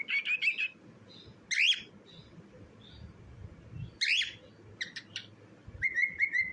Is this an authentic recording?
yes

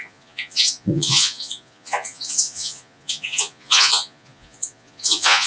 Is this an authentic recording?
no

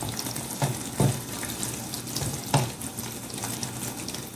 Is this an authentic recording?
yes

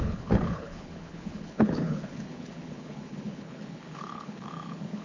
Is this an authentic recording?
no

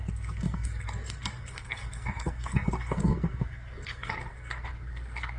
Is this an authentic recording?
no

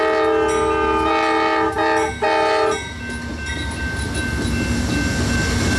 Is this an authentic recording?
yes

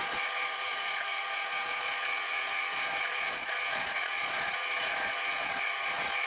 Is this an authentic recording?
no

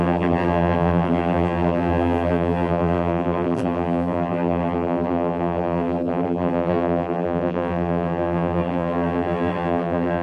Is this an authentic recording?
no